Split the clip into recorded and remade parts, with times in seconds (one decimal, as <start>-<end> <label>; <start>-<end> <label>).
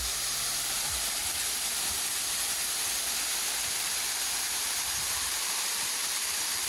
0.0-1.2 remade; 1.2-4.2 recorded; 4.2-6.7 remade